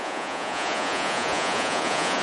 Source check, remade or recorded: remade